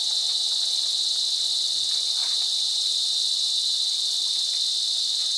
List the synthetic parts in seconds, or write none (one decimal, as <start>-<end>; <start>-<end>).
2.2-3.2